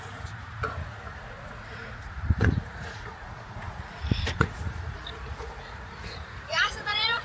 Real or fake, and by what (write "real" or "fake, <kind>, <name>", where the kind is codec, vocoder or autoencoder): fake, vocoder, Vocos